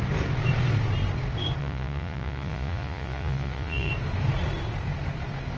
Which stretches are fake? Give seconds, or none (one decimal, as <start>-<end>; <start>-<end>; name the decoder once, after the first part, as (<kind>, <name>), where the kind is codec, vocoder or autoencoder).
1.6-3.9 (vocoder, Vocos)